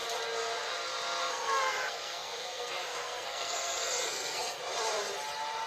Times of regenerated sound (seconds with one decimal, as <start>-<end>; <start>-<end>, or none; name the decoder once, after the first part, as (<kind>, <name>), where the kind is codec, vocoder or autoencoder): 1.2-4.6 (codec, SNAC)